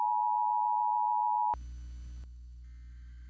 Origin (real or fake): real